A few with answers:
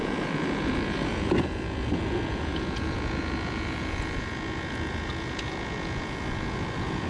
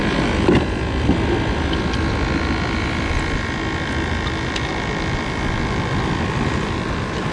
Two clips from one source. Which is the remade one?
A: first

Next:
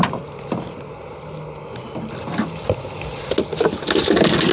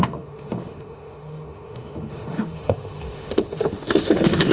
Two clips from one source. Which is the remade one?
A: second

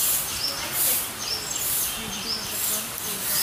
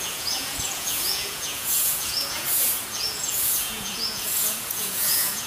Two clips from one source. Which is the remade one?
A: second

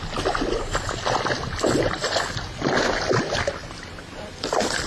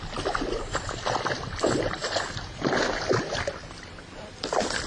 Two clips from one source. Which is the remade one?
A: second